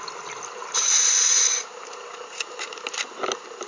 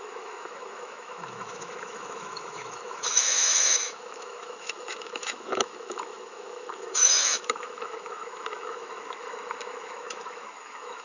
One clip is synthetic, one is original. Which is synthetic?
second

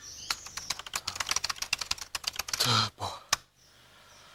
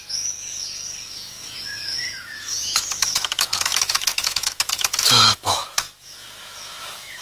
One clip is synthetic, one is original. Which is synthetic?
second